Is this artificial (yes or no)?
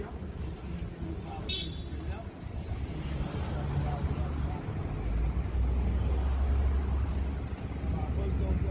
no